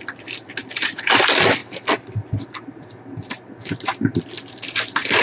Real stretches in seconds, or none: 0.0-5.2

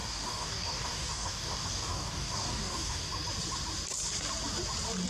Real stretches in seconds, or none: 3.1-5.1